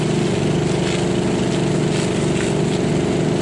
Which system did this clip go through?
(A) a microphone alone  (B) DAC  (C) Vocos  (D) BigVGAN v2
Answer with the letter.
A